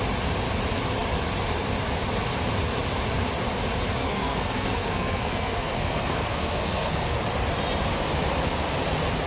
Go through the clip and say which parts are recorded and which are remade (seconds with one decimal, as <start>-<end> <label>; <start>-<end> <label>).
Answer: 0.0-4.0 recorded; 4.0-7.2 remade; 7.2-9.3 recorded